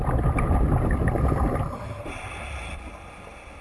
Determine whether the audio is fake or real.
real